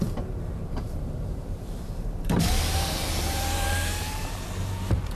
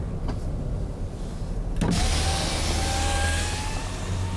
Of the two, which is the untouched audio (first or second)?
second